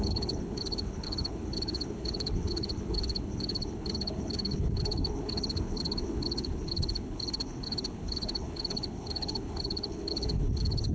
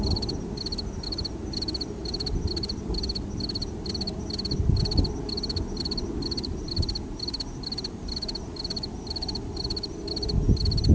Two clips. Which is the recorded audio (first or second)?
second